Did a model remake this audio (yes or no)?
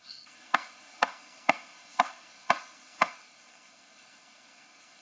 yes